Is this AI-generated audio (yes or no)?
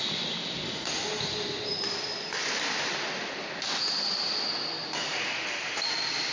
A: no